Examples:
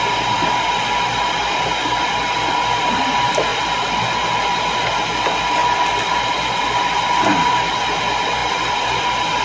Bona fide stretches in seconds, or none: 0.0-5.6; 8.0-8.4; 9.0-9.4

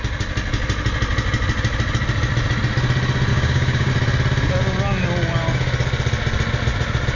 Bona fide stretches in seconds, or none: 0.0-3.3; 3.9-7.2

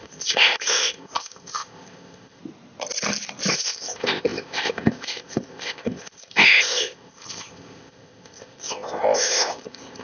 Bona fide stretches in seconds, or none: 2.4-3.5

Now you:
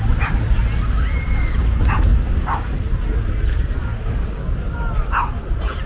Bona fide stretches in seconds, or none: 0.0-3.8; 4.4-5.9